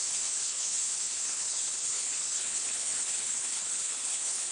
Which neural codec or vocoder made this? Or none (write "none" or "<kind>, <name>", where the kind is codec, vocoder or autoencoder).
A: codec, HILCodec